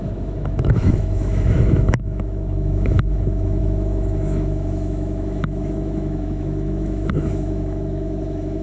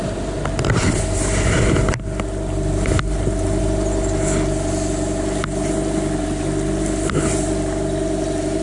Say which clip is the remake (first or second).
first